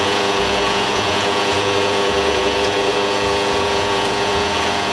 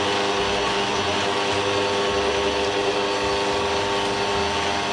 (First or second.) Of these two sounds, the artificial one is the first